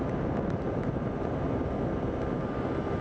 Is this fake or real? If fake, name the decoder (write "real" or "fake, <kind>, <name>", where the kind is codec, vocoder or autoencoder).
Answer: real